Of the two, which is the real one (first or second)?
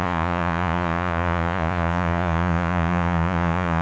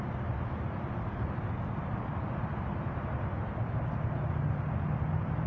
second